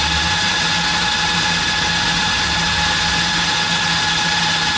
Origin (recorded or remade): recorded